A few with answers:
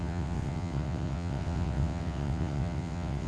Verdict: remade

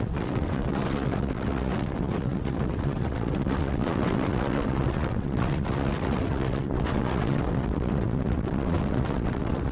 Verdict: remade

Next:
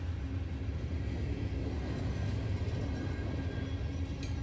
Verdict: recorded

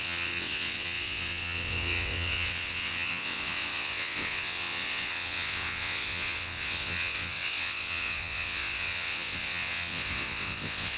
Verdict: remade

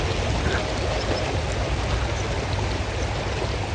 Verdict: recorded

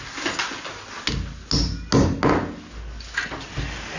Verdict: recorded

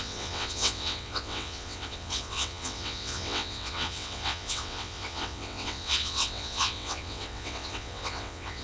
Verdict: remade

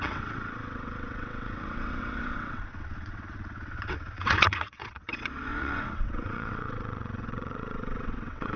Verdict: remade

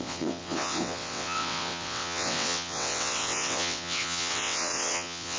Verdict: remade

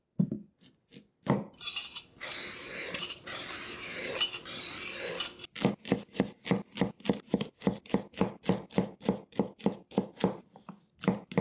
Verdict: recorded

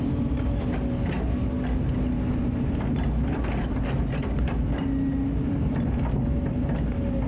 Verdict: recorded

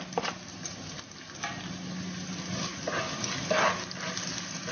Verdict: recorded